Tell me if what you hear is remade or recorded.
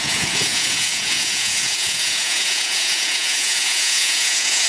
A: remade